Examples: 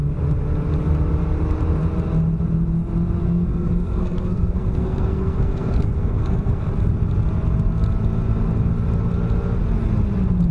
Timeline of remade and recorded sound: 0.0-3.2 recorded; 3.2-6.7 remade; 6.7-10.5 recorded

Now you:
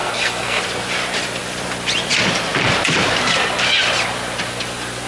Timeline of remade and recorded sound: 0.0-0.6 remade; 0.6-5.1 recorded

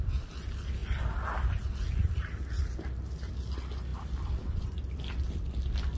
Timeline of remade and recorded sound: 0.0-3.9 recorded; 3.9-5.3 remade; 5.3-6.0 recorded

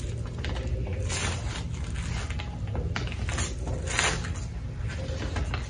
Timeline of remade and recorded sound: 0.0-5.7 recorded

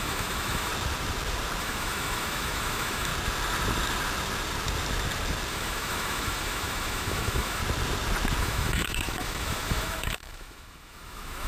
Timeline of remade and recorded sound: 0.0-0.7 remade; 0.7-1.6 recorded; 1.6-3.1 remade; 3.1-5.5 recorded; 5.5-7.6 remade; 7.6-8.4 recorded; 8.4-11.5 remade

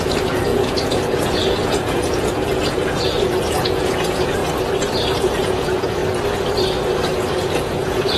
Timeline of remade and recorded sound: 0.0-4.4 remade; 4.4-5.2 recorded; 5.2-6.0 remade; 6.0-7.3 recorded; 7.3-8.2 remade